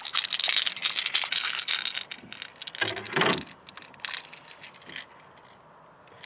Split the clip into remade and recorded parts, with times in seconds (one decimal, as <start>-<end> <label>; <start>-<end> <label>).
0.0-6.3 recorded